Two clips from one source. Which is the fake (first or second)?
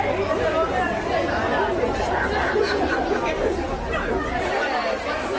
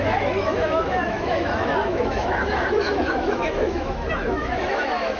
second